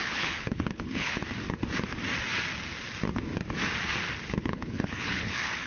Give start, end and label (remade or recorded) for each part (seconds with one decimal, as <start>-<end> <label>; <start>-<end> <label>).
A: 0.0-1.2 remade; 1.2-4.4 recorded; 4.4-5.7 remade